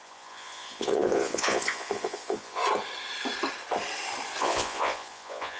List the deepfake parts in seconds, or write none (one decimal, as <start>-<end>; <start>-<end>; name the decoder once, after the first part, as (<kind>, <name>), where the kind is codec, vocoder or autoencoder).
0.0-2.6 (vocoder, Vocos); 4.4-5.6